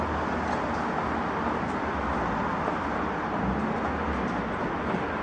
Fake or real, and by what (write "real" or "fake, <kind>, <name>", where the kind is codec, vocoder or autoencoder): real